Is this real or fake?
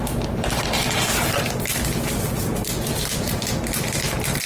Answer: real